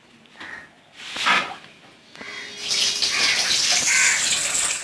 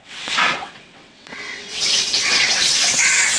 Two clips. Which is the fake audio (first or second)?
second